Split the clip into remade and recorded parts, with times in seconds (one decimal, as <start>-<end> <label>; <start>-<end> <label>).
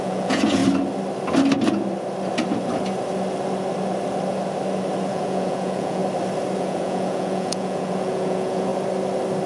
0.0-0.6 remade; 0.6-5.1 recorded; 5.1-6.0 remade; 6.0-6.6 recorded; 6.6-8.7 remade; 8.7-9.5 recorded